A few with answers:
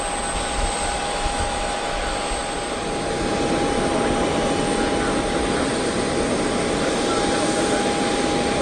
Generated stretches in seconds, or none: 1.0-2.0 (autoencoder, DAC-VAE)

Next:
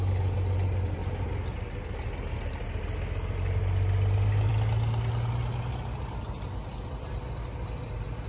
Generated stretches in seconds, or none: none

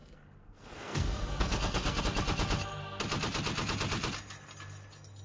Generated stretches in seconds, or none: 0.0-2.0 (codec, SNAC)

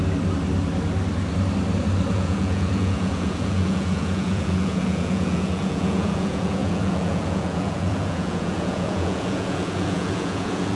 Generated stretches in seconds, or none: 2.1-10.8 (vocoder, Vocos)